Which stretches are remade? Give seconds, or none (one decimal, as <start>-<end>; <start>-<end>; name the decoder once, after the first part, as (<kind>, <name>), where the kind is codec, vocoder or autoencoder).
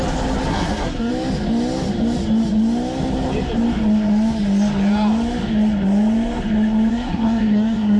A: 0.5-1.1 (codec, SNAC); 6.9-8.0